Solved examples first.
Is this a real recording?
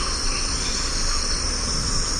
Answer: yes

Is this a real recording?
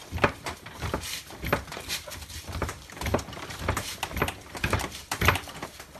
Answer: no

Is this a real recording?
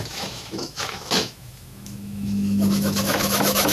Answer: no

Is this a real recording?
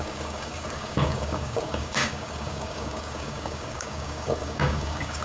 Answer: no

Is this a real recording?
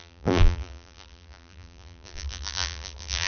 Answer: no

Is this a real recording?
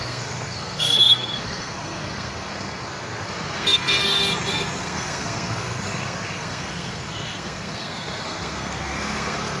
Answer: no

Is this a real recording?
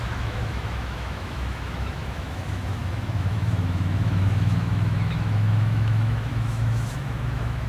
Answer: no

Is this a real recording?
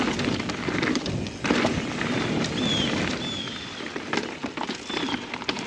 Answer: yes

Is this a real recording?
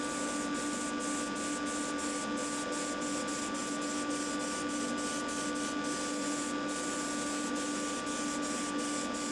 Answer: yes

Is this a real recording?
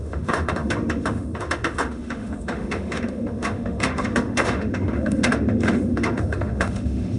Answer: no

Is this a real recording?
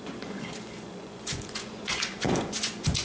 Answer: no